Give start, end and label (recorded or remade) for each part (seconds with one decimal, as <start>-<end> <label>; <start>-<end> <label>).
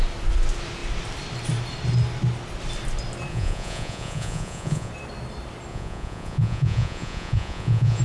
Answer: 0.0-3.3 recorded; 3.3-4.9 remade; 4.9-5.7 recorded; 5.7-8.0 remade